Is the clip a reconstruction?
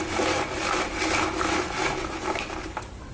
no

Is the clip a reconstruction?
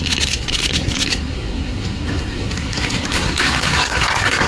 yes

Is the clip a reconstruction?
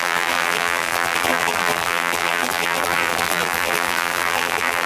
yes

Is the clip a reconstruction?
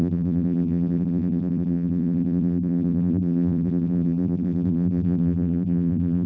yes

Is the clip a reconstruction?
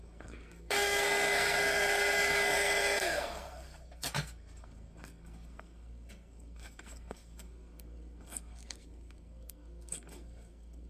yes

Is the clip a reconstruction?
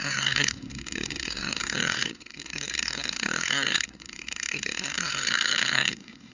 yes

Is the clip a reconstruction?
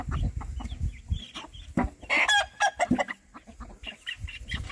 no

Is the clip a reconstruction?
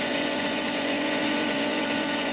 yes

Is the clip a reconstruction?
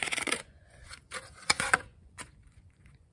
yes